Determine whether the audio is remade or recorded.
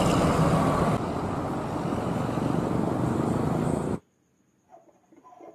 recorded